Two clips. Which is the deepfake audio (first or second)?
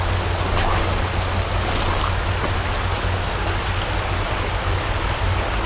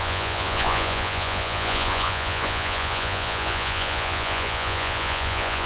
second